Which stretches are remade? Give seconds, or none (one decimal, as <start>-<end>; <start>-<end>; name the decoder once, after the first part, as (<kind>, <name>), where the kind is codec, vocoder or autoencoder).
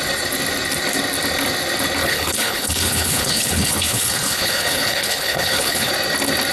2.0-5.9 (codec, HILCodec)